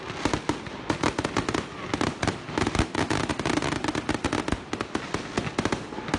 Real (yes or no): yes